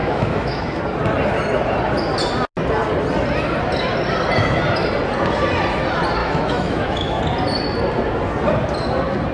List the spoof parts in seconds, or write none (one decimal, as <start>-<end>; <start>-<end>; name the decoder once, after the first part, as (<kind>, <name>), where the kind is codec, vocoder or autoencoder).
0.0-0.8 (autoencoder, DAC-VAE); 6.2-7.2